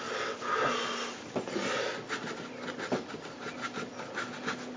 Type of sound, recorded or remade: recorded